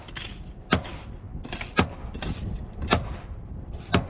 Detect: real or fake real